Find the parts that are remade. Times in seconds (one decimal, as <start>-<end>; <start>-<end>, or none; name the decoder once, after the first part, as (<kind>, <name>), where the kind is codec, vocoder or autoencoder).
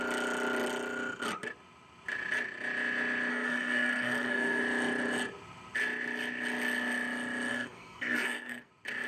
3.3-4.6 (codec, SNAC); 7.5-8.7